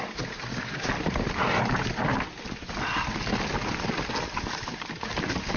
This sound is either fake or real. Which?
real